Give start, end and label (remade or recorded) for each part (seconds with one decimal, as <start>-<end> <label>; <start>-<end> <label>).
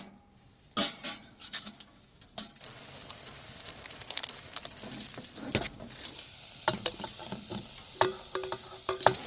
0.0-1.4 recorded; 1.4-2.2 remade; 2.2-9.3 recorded